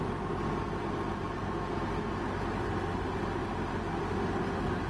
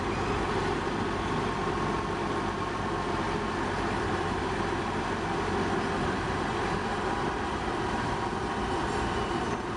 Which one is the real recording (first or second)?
first